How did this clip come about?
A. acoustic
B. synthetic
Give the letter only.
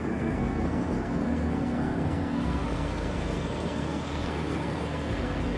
B